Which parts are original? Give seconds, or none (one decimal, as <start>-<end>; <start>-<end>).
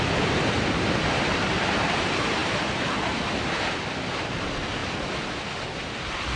4.8-5.9